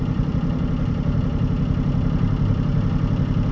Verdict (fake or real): fake